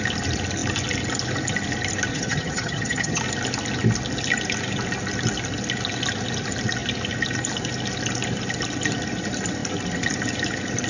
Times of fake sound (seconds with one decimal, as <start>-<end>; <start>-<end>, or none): 2.1-3.2